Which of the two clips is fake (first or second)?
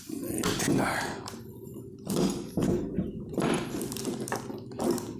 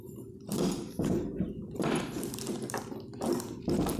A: second